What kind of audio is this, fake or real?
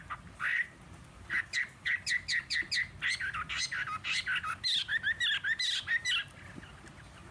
real